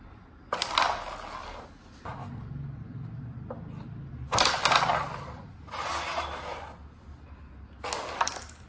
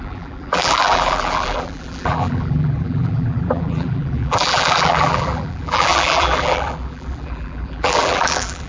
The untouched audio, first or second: first